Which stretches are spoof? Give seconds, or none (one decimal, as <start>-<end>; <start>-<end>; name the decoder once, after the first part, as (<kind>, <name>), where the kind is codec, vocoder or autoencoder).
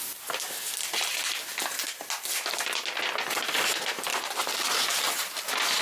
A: none